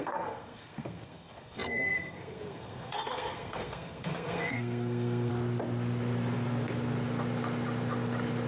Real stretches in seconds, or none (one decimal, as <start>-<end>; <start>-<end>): 5.3-8.5